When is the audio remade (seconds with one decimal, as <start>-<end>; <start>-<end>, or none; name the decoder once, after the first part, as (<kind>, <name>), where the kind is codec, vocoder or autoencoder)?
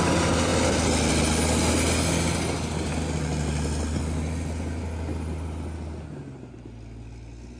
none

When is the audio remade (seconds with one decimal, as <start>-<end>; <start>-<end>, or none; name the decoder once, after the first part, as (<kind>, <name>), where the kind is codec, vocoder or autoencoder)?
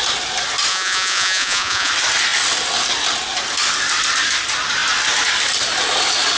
0.7-1.9 (vocoder, Vocos)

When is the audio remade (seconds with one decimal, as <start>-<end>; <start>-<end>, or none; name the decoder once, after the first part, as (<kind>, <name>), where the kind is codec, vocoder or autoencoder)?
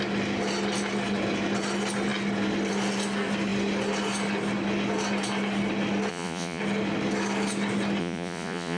6.1-6.6 (vocoder, Vocos); 8.0-8.8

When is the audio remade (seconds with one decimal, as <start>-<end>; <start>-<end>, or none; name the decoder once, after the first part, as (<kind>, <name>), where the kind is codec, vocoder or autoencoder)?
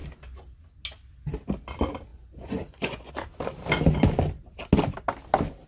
2.1-3.1 (vocoder, Vocos)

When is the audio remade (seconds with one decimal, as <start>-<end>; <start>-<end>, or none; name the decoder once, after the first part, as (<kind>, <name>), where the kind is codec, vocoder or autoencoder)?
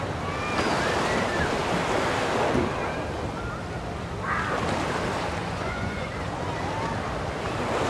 5.4-6.1 (vocoder, Vocos)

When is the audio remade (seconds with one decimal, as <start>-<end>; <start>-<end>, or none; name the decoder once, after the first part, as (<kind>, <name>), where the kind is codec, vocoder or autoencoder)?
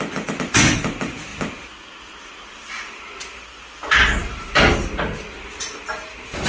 none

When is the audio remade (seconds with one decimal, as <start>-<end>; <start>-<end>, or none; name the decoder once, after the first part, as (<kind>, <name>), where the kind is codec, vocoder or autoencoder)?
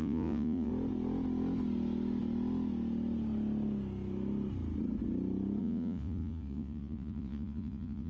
0.0-0.7 (vocoder, Vocos); 5.6-8.1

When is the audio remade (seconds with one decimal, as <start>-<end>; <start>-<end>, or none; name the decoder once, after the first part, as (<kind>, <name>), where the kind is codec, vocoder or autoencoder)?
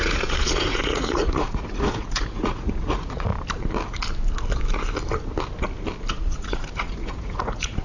0.0-3.3 (vocoder, Vocos); 6.1-7.8